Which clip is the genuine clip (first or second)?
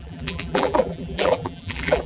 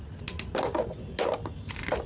second